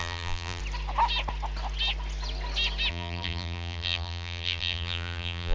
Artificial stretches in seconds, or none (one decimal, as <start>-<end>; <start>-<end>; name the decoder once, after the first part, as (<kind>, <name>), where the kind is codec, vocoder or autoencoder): 0.0-0.6 (vocoder, BigVGAN v2); 2.9-5.5